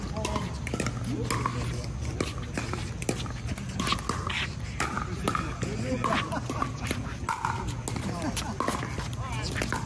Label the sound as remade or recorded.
recorded